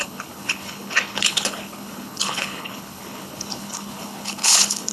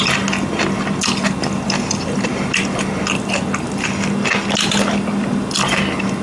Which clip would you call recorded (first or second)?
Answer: second